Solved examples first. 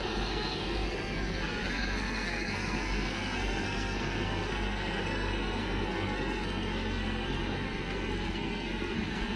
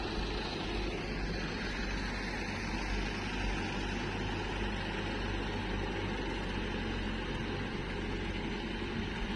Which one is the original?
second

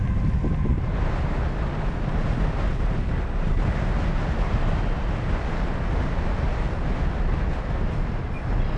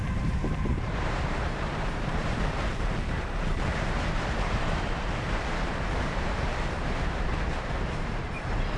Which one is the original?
first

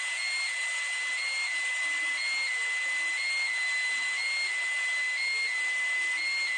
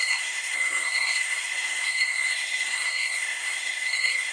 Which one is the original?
first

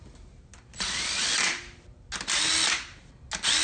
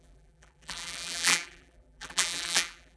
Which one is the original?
first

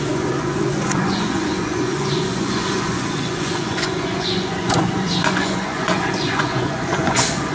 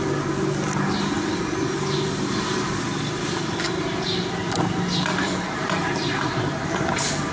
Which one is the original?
second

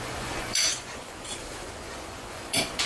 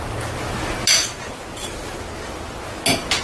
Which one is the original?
second